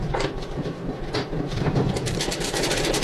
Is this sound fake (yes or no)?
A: yes